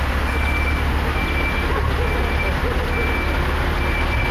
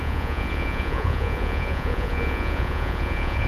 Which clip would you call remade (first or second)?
second